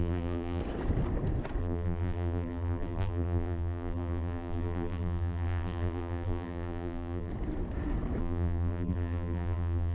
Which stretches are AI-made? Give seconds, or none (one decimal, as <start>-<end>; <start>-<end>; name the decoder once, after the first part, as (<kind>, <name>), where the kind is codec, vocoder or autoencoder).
0.0-0.6 (vocoder, BigVGAN v2); 1.6-7.3; 8.2-9.9